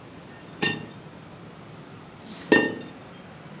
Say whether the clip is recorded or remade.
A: recorded